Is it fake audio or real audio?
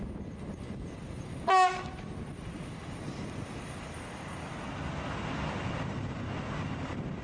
real